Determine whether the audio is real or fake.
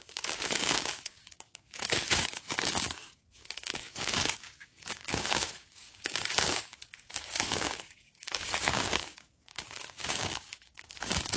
fake